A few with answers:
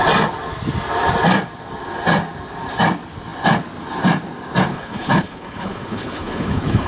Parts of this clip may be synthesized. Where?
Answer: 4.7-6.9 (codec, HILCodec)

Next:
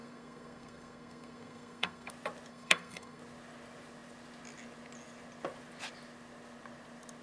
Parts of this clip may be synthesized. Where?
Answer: 0.0-2.1 (codec, SNAC); 2.5-3.2

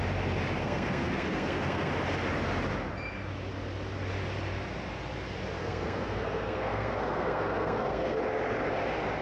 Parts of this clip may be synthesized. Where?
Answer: 0.6-1.9 (codec, SNAC); 5.6-8.2

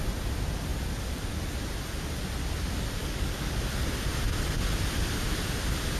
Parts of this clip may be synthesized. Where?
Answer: 3.0-3.6 (codec, DAC)

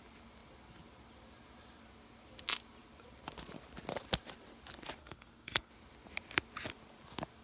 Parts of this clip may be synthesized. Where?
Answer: 5.0-5.7 (codec, SNAC)